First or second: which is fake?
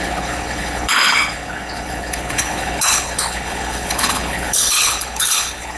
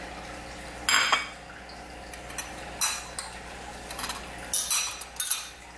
first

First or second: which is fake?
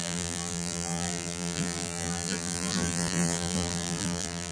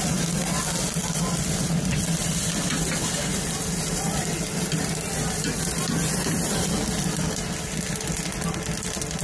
first